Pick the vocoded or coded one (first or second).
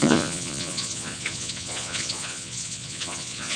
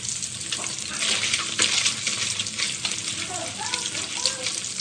first